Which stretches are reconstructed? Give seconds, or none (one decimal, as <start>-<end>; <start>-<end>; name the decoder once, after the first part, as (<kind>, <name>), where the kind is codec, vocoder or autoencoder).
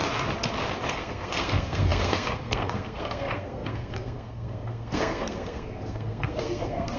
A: 0.9-7.0 (codec, SNAC)